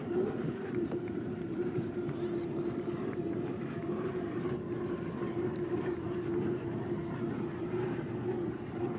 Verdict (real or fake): fake